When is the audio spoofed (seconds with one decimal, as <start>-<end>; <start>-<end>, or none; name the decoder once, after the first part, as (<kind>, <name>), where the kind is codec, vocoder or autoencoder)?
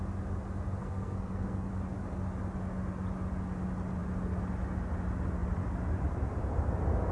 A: 0.8-1.7 (codec, SNAC)